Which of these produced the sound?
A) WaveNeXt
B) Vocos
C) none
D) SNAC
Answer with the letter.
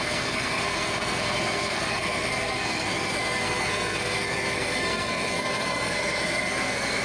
D